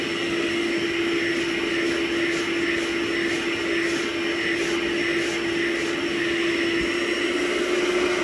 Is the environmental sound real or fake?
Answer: real